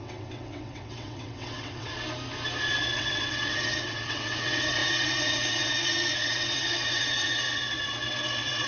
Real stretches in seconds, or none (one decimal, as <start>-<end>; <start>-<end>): 1.9-2.7